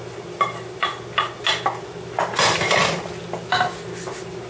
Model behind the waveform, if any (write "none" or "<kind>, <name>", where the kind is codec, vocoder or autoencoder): none